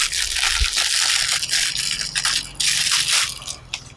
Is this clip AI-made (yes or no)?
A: no